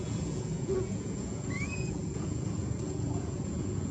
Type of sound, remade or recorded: remade